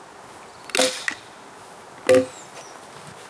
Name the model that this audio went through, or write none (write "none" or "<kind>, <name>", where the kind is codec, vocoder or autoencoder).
none